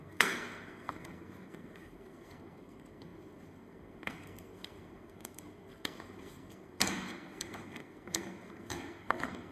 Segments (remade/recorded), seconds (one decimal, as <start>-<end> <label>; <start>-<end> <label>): 0.0-9.5 remade